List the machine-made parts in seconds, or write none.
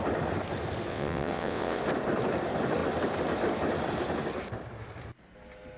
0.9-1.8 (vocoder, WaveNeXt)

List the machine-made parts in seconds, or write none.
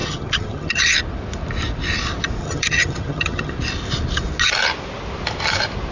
0.0-0.8 (vocoder, HiFi-GAN); 2.4-3.5